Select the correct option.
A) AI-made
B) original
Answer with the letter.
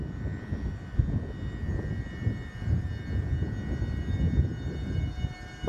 B